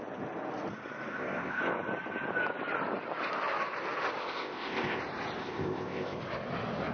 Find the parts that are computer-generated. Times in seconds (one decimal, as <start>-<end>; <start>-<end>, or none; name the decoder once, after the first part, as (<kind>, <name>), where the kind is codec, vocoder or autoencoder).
1.1-1.6 (codec, ZipCodec); 4.2-5.0; 5.4-6.2